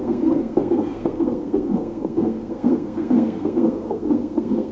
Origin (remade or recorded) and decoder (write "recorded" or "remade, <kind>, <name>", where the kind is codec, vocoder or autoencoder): remade, codec, SNAC